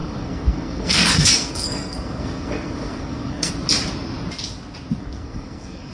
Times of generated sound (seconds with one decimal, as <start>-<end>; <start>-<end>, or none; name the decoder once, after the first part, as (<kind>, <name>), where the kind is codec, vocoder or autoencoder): 0.0-3.5 (codec, SNAC); 5.0-5.9

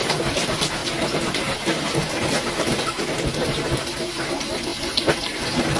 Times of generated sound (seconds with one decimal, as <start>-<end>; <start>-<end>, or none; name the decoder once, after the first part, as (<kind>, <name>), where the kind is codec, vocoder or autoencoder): none

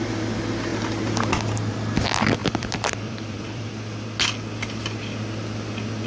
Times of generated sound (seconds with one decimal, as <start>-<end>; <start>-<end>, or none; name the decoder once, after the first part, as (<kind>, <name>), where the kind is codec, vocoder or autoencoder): 2.4-3.7 (vocoder, BigVGAN v2)

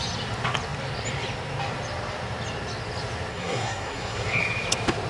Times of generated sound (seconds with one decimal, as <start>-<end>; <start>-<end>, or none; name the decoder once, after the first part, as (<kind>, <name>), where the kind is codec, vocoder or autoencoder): 3.3-4.4 (codec, SNAC)

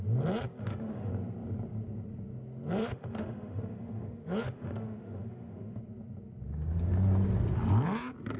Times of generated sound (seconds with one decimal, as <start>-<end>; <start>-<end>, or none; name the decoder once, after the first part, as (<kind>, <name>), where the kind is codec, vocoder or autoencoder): 0.6-1.1 (autoencoder, DAC-VAE); 2.8-5.8